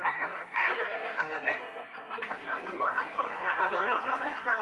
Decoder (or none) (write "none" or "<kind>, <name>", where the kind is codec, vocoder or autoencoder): codec, SNAC